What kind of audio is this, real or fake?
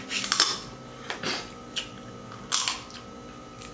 real